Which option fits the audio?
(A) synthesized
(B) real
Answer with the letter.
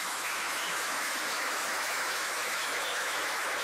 A